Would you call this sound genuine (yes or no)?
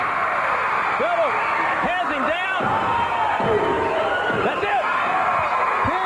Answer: yes